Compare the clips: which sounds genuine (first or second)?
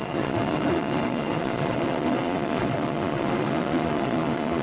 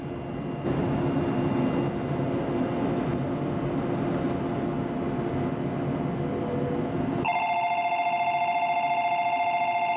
second